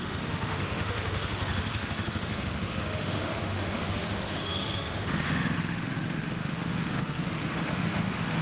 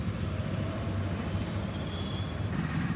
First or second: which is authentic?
second